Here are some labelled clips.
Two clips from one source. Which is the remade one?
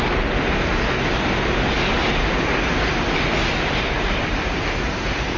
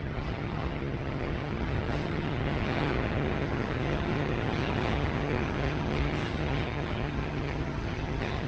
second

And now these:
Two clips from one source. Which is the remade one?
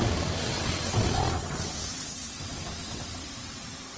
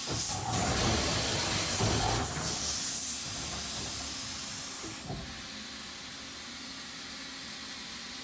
first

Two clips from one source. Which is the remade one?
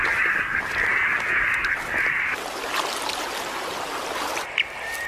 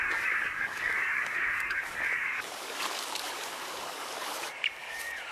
second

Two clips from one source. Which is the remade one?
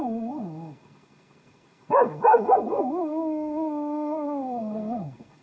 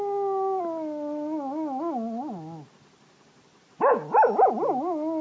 first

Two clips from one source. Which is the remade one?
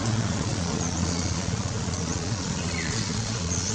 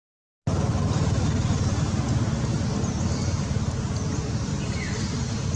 first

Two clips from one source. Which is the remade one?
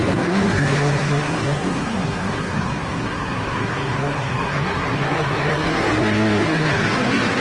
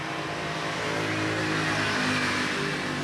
first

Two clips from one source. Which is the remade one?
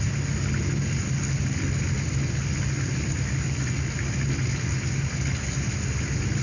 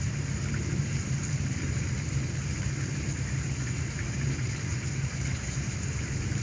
second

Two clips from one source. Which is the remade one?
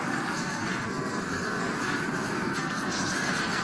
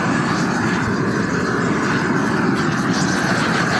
first